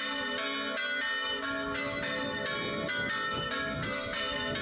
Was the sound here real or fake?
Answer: real